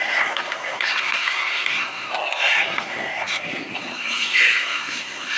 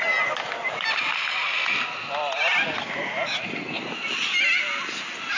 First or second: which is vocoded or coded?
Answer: first